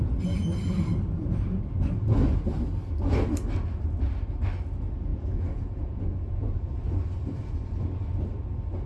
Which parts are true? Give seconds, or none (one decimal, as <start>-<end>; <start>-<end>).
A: 0.0-5.1; 6.8-8.9